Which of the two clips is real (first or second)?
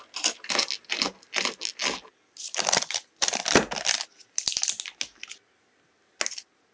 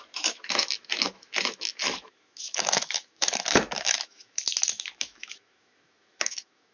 first